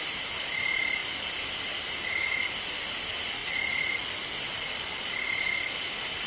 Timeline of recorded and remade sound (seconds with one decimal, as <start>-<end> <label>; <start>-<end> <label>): 0.0-6.3 recorded